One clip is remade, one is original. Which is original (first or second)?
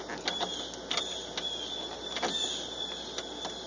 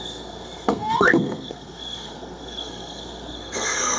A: first